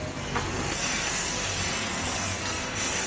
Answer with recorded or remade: remade